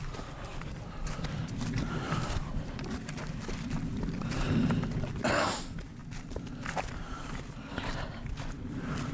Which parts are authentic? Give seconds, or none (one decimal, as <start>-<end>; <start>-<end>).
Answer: 6.0-7.3